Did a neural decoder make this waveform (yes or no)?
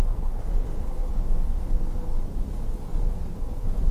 yes